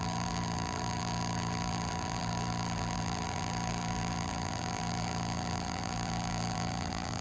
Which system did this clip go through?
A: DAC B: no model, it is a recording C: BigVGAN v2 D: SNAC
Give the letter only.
C